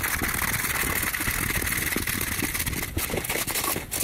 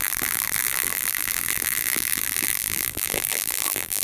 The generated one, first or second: second